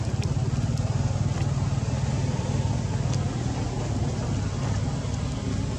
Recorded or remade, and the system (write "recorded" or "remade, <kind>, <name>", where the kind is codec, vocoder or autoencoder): recorded